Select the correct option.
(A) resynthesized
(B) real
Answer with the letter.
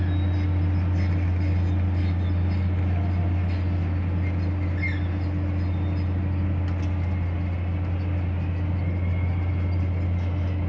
B